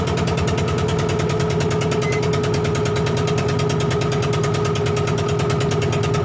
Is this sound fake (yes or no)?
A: no